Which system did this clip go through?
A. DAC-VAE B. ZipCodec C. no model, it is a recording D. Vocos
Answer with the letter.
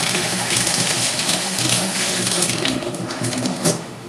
A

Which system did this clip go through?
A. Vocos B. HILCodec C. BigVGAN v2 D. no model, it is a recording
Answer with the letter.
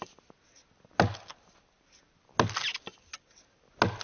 D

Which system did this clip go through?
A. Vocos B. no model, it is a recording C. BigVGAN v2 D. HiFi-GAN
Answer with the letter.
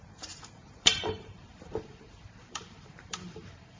C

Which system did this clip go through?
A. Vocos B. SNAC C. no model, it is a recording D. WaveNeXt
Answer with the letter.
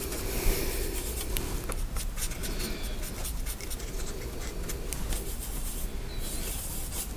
C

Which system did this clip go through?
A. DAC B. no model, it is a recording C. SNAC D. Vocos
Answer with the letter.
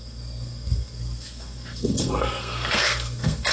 C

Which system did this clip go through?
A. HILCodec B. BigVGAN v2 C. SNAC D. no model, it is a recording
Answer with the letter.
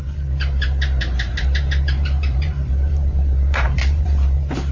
B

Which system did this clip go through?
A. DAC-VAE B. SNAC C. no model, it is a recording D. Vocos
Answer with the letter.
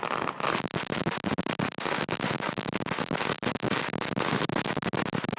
C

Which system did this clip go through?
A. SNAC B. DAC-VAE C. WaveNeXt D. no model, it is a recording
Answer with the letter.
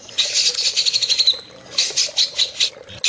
D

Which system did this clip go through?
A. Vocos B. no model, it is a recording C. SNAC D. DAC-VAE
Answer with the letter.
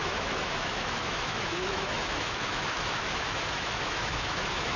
D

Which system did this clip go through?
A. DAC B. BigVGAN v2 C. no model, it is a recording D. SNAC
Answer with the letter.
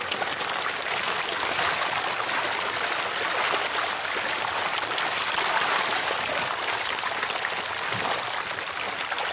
C